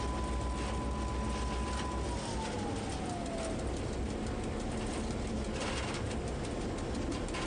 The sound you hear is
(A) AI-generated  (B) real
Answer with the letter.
B